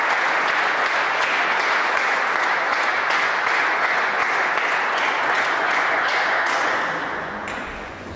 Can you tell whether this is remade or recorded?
remade